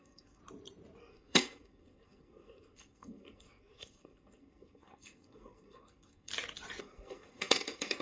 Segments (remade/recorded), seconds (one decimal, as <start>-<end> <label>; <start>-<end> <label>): 0.0-0.4 remade; 0.4-1.0 recorded; 1.0-6.3 remade; 6.3-6.8 recorded; 6.8-8.0 remade